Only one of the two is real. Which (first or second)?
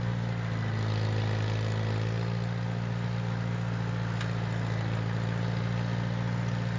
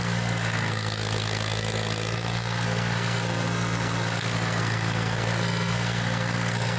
first